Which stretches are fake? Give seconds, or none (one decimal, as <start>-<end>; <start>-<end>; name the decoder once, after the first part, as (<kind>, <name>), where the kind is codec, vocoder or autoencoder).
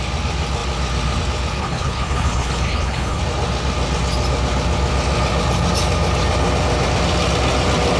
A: 1.6-3.2 (codec, HILCodec)